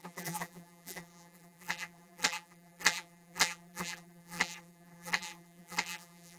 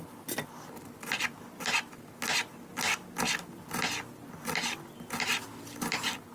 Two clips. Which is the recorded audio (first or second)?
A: second